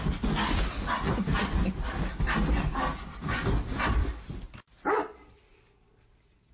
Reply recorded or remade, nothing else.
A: recorded